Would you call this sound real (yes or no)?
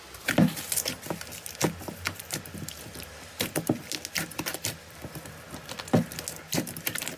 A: yes